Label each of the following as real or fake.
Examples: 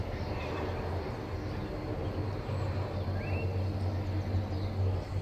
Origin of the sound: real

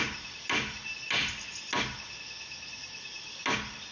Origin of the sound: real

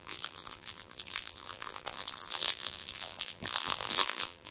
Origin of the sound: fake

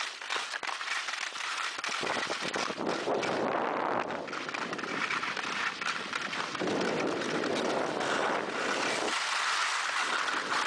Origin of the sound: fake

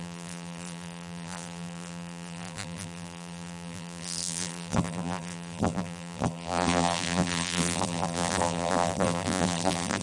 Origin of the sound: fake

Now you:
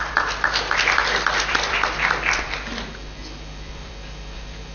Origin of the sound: fake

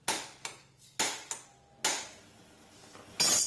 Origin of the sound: real